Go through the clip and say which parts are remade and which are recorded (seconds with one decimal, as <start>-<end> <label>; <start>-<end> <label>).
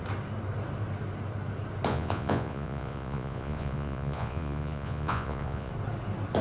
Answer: 0.0-1.9 recorded; 1.9-5.7 remade; 5.7-6.4 recorded